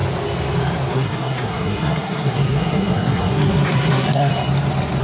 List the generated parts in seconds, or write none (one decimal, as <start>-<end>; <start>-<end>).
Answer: 0.9-4.3

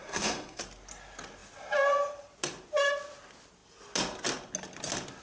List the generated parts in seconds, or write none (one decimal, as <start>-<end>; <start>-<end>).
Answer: 0.0-0.6

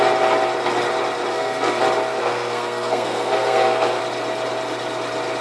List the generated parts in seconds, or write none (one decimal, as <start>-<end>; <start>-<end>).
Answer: 1.3-1.8; 2.2-4.0

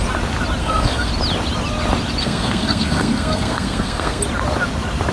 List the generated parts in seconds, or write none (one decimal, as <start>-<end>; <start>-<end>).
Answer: 0.6-1.1; 2.2-4.2

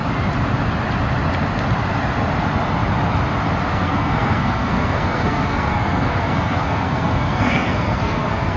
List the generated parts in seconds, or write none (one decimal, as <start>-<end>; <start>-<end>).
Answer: 3.7-8.6

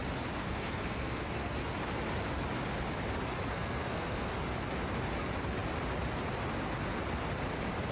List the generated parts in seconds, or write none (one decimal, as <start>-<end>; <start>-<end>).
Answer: 0.4-1.5; 3.5-4.3

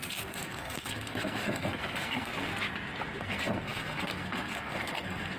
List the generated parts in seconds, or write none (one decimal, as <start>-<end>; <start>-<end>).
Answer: 0.0-2.5; 3.2-5.4

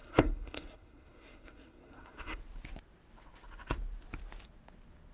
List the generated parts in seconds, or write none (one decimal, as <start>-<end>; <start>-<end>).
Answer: 0.0-2.4